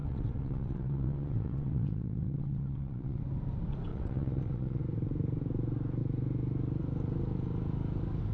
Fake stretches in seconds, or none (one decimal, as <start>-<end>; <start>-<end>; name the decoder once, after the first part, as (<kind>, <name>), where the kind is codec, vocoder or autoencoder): 0.0-3.2 (vocoder, WaveNeXt); 3.9-4.8